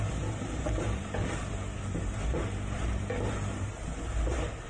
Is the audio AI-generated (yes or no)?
yes